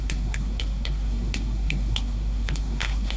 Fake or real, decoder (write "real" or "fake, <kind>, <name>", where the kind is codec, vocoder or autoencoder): fake, codec, SNAC